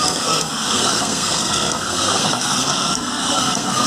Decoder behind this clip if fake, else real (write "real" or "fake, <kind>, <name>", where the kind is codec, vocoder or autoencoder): fake, codec, SNAC